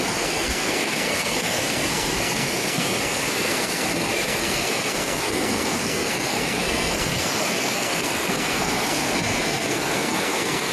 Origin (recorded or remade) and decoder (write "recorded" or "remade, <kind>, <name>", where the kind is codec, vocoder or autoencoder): remade, codec, SNAC